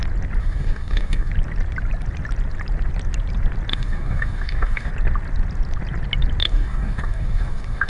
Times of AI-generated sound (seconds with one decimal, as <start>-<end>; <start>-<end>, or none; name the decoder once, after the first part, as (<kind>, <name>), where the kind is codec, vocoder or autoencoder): 0.4-1.3 (codec, DAC); 3.7-4.9; 6.4-7.9